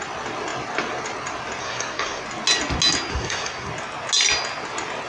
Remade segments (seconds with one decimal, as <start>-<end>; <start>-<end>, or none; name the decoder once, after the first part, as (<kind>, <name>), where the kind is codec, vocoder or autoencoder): 1.6-2.2 (codec, SNAC); 3.1-3.7